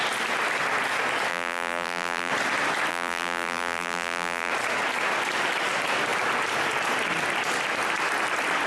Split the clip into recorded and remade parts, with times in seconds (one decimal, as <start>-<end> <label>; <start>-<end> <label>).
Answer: 0.0-1.3 recorded; 1.3-2.3 remade; 2.3-2.9 recorded; 2.9-4.5 remade; 4.5-8.7 recorded